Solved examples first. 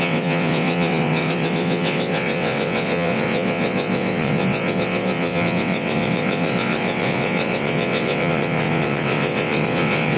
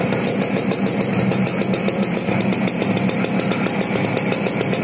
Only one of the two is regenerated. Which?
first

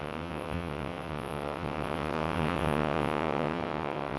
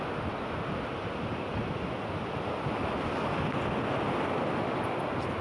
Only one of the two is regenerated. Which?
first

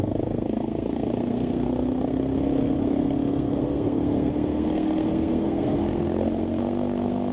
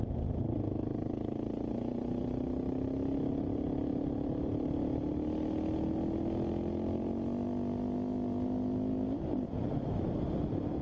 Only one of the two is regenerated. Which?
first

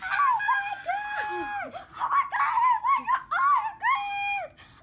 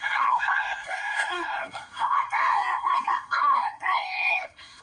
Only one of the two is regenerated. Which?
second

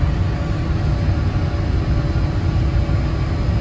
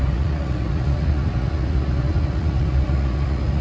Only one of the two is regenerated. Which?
second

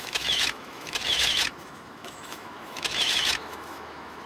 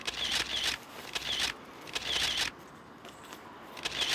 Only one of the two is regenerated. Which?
first